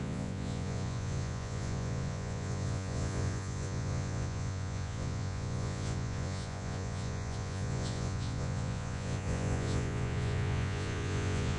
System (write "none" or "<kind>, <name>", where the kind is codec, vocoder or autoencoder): vocoder, Vocos